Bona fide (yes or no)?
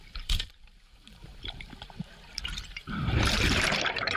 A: no